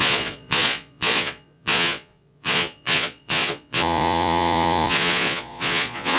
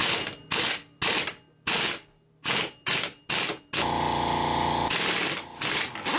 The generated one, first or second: first